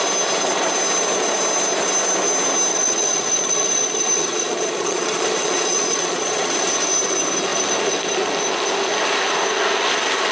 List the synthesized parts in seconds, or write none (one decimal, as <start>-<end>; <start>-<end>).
2.7-6.7